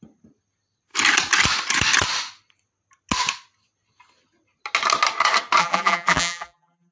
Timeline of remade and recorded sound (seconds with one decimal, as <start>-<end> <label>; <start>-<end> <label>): 0.0-5.6 recorded; 5.6-6.9 remade